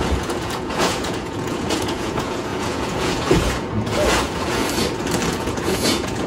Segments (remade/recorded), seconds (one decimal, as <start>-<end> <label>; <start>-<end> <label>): 0.0-4.6 remade; 4.6-5.3 recorded; 5.3-6.3 remade